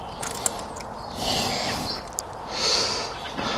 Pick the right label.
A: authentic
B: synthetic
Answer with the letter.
A